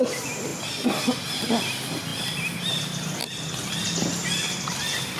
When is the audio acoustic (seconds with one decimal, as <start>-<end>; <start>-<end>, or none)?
0.0-5.2